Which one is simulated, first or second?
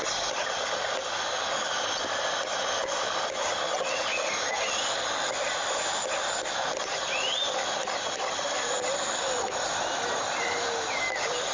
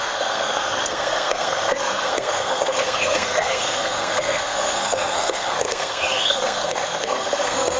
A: second